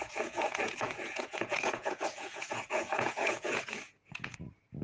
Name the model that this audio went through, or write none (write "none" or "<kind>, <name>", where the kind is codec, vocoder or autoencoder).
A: vocoder, Vocos